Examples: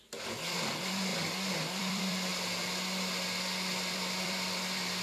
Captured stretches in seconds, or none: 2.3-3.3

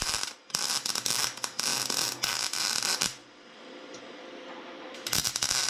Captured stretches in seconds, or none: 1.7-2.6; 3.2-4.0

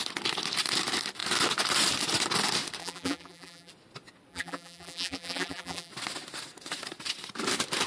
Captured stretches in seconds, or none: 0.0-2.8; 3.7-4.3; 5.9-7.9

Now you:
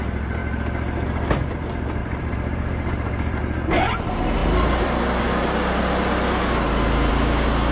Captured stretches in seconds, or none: 0.0-2.0; 3.4-7.7